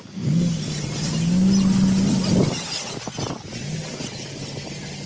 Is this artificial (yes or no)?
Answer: no